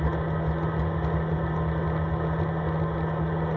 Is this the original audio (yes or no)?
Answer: yes